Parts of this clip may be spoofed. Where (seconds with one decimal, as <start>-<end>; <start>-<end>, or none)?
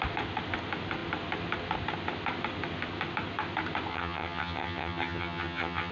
3.9-5.9